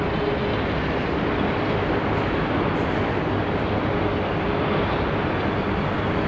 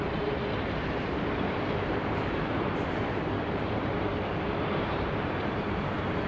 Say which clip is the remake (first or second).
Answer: second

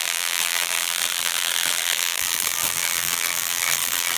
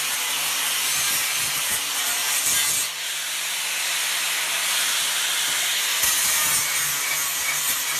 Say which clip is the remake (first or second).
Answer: first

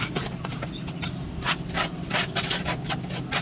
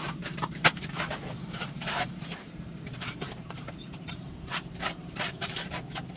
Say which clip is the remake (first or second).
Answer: second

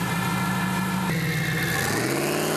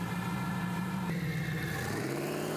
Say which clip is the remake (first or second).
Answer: second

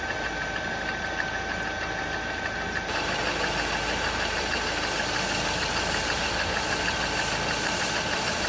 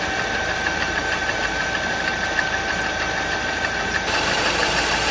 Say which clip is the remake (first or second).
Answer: second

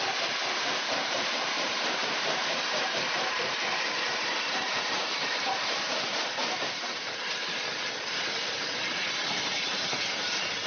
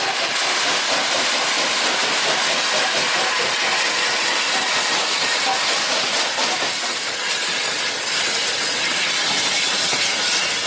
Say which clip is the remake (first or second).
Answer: first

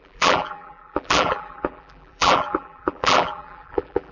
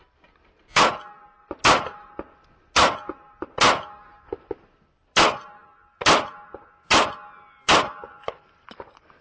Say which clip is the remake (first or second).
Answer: first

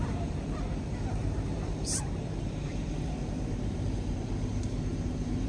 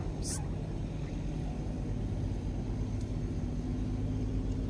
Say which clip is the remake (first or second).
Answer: first